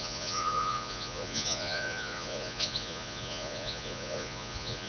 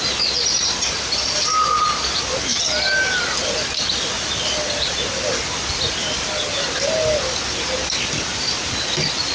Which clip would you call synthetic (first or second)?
first